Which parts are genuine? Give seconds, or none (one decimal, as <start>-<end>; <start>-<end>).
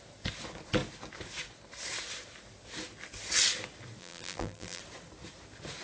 0.0-4.0; 4.8-5.8